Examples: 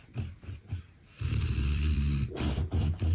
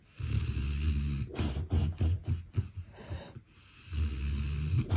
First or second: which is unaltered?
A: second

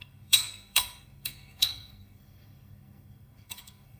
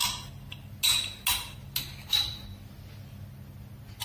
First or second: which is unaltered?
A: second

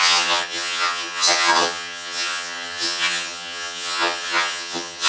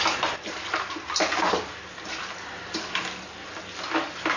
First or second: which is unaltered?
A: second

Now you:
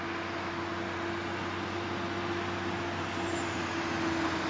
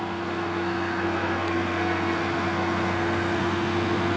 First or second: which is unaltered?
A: first